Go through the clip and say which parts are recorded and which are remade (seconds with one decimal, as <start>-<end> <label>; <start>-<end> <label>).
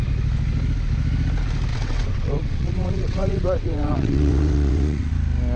0.0-1.7 recorded; 1.7-5.1 remade; 5.1-5.6 recorded